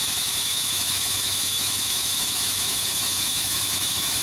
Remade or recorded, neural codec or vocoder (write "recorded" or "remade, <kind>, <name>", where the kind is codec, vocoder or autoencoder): remade, autoencoder, DAC-VAE